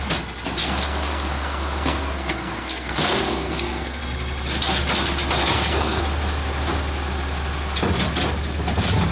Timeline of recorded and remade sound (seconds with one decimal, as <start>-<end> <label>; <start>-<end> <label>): 0.0-0.6 recorded; 0.6-4.0 remade; 4.0-5.4 recorded; 5.4-6.0 remade; 6.0-9.1 recorded

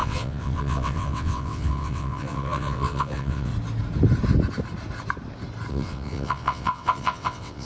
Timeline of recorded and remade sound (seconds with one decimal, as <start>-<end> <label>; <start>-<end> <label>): 0.0-3.5 remade; 3.5-5.7 recorded; 5.7-7.6 remade

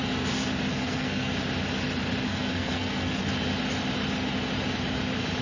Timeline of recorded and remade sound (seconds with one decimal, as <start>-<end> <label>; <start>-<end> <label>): 0.0-0.7 recorded; 0.7-1.3 remade; 1.3-2.3 recorded; 2.3-3.2 remade; 3.2-5.4 recorded